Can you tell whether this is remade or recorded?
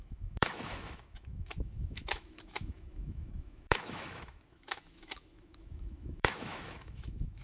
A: remade